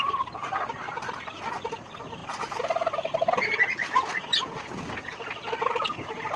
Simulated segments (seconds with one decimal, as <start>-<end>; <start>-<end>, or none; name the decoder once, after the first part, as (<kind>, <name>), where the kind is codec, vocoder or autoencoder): none